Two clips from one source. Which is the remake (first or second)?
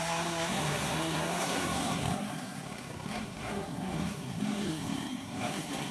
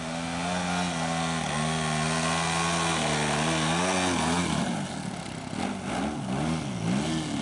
first